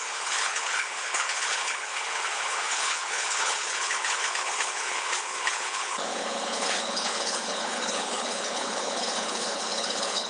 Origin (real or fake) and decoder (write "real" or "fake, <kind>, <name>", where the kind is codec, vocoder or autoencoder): fake, codec, HILCodec